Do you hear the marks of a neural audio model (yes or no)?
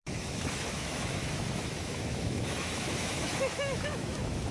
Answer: yes